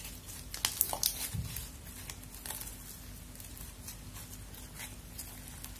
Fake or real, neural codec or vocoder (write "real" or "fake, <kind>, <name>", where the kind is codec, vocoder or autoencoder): real